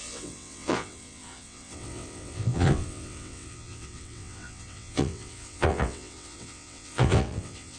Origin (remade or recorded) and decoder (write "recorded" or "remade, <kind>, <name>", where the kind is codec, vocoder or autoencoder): remade, vocoder, WaveNeXt